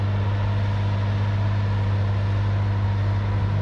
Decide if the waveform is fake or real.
real